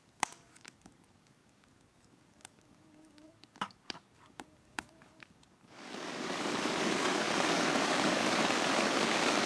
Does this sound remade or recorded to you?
remade